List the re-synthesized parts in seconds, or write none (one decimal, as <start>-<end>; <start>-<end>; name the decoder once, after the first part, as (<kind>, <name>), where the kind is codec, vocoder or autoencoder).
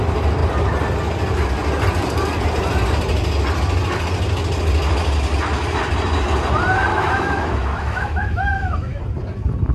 6.9-9.0 (autoencoder, DAC-VAE)